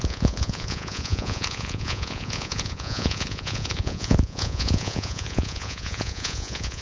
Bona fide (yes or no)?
no